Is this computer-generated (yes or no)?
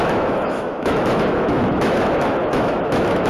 yes